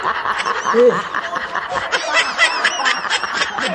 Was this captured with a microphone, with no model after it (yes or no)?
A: yes